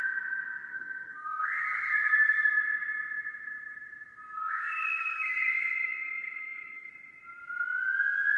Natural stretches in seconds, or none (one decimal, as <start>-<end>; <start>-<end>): 0.0-0.7; 2.6-4.4; 6.9-8.4